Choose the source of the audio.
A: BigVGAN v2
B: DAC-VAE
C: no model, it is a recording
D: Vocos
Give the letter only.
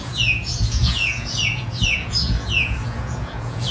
D